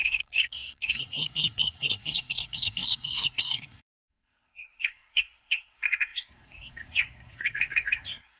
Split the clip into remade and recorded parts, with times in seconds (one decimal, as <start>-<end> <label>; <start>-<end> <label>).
0.0-8.4 remade